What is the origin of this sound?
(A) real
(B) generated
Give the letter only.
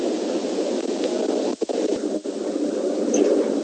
A